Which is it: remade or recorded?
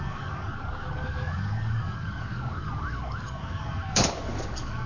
remade